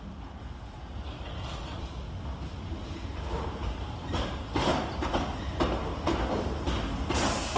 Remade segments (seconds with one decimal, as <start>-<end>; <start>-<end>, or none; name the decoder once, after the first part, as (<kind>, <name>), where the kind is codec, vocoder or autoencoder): 2.8-4.3 (vocoder, BigVGAN v2)